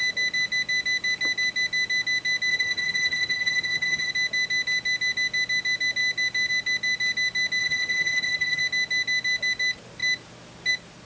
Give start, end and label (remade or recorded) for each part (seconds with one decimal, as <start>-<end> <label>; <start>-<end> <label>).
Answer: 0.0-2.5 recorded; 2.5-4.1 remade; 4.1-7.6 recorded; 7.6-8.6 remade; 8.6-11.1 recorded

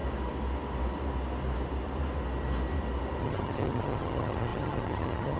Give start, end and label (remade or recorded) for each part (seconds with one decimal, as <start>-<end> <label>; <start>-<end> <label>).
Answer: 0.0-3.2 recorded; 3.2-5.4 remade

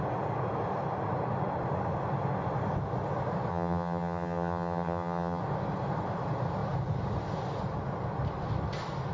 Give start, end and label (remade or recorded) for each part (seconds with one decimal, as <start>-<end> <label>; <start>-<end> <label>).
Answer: 0.0-3.5 recorded; 3.5-5.4 remade; 5.4-9.1 recorded

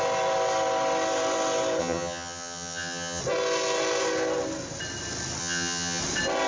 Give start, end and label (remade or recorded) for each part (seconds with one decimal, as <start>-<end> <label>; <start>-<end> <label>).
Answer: 0.0-1.8 recorded; 1.8-3.2 remade; 3.2-5.4 recorded; 5.4-6.0 remade; 6.0-6.5 recorded

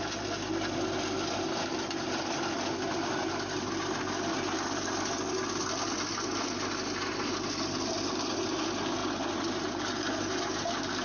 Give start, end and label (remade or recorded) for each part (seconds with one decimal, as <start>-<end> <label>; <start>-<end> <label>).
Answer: 0.0-11.0 recorded

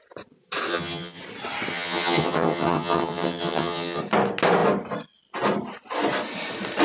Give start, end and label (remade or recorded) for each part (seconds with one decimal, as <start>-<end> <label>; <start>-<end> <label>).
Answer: 0.0-0.7 recorded; 0.7-1.2 remade; 1.2-1.7 recorded; 1.7-4.0 remade; 4.0-6.8 recorded